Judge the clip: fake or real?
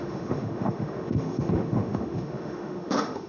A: fake